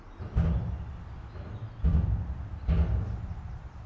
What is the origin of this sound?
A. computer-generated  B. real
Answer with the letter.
B